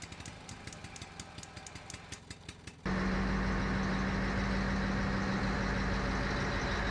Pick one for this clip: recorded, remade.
recorded